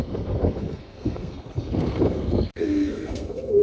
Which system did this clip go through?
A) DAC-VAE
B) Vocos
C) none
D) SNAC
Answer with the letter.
D